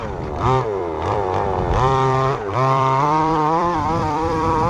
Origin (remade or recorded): remade